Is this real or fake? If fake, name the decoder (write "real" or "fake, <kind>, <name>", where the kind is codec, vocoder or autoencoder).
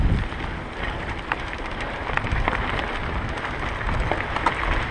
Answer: real